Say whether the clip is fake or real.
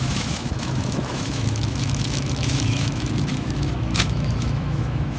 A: fake